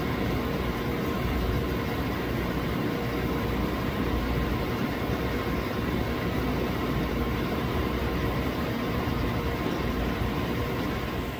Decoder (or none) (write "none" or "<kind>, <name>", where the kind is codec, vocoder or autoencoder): vocoder, BigVGAN v2